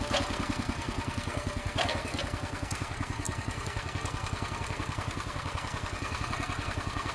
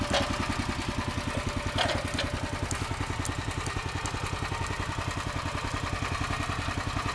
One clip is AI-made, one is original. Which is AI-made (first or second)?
first